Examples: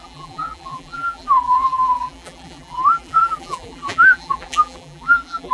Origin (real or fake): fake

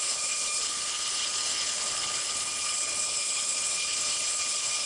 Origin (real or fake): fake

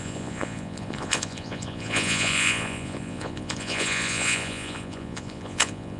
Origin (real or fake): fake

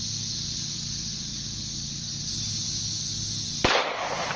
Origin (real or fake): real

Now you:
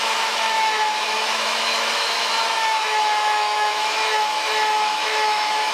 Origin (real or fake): fake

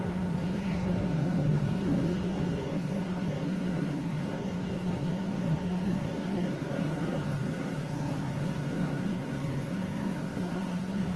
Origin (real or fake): fake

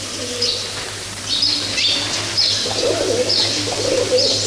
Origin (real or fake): real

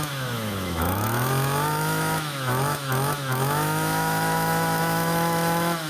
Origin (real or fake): fake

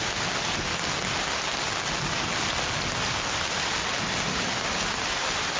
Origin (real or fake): real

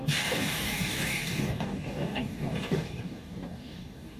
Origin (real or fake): fake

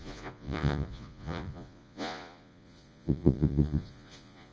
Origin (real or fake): fake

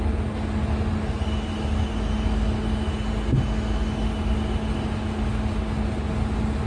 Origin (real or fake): real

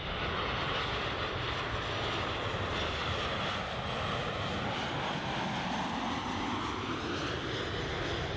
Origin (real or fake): real